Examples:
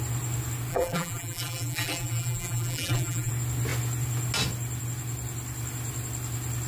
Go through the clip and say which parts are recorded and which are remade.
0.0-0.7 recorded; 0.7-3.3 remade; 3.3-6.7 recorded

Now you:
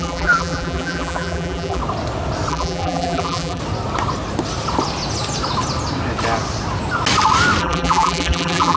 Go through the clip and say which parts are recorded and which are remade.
0.0-1.8 remade; 1.8-2.5 recorded; 2.5-3.6 remade; 3.6-7.6 recorded; 7.6-8.8 remade

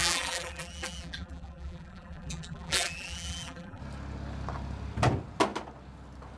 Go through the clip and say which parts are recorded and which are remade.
0.0-3.8 remade; 3.8-6.4 recorded

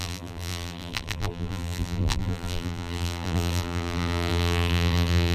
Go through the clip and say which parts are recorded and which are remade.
0.0-5.3 remade

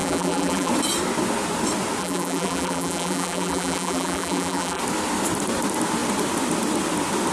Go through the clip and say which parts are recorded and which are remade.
0.0-0.7 remade; 0.7-2.0 recorded; 2.0-4.8 remade; 4.8-7.3 recorded

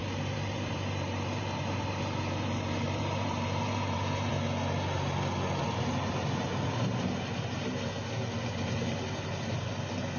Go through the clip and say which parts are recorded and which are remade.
0.0-4.3 remade; 4.3-10.2 recorded

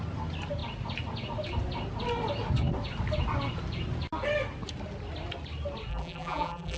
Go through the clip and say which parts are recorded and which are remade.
0.0-5.9 recorded; 5.9-6.8 remade

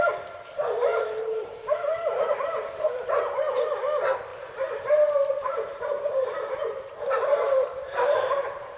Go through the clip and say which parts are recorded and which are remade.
0.0-0.9 recorded; 0.9-3.4 remade; 3.4-4.3 recorded; 4.3-8.8 remade